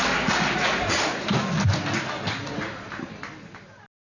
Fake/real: real